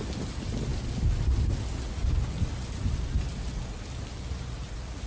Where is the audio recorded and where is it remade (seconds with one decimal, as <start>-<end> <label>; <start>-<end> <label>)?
0.0-5.1 recorded